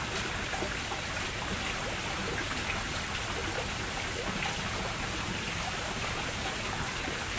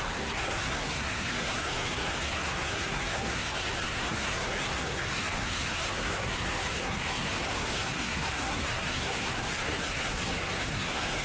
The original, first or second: first